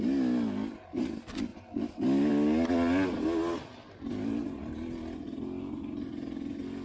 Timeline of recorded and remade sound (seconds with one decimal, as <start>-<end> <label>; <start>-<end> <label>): 0.0-6.8 recorded